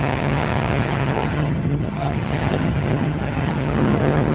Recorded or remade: remade